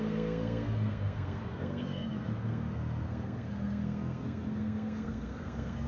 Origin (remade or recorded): remade